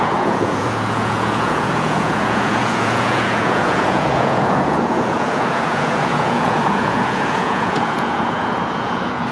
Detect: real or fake fake